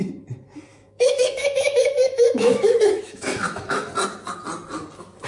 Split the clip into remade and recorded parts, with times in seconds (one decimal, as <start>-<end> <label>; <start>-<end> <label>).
0.0-0.7 recorded; 0.7-3.9 remade; 3.9-5.3 recorded